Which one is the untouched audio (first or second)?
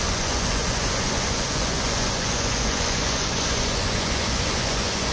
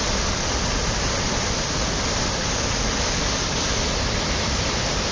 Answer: second